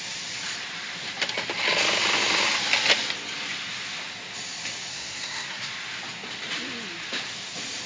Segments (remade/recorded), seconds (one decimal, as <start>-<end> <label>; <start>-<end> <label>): 0.0-4.9 recorded; 4.9-5.7 remade; 5.7-7.9 recorded